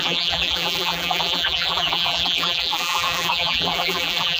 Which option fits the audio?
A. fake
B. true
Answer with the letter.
A